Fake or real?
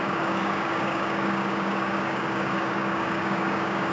fake